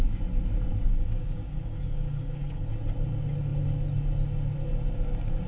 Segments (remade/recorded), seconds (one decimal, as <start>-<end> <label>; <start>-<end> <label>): 0.0-0.9 recorded; 0.9-2.7 remade; 2.7-5.5 recorded